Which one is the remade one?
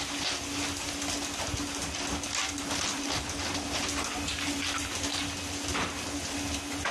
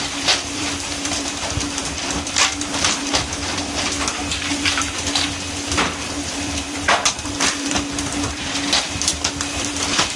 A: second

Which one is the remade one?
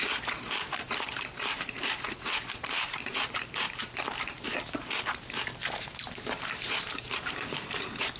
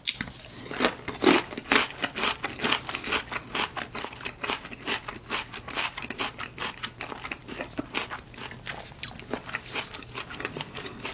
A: first